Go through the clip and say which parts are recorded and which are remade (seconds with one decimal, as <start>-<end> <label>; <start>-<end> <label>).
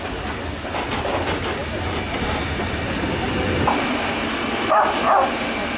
0.0-5.8 recorded